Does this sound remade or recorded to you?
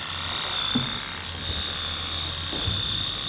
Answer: recorded